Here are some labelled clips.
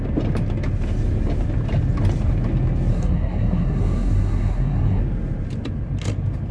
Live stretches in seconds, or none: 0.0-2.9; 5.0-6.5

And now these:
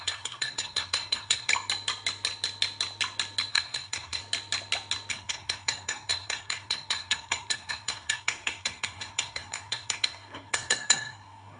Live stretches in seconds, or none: 1.5-3.5; 4.2-5.1

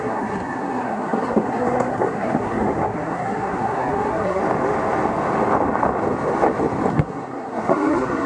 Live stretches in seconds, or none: 4.4-6.9

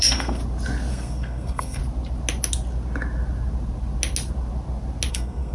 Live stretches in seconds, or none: 0.4-0.9; 1.8-5.1

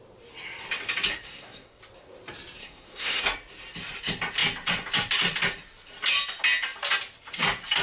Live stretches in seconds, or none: 0.0-1.1; 1.8-2.6; 3.2-7.8

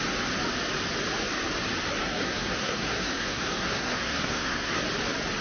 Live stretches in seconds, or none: 0.0-2.0; 4.8-5.4

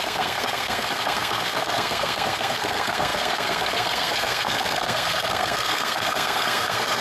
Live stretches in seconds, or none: none

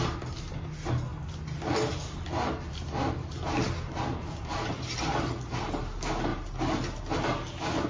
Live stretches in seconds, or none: 0.0-7.9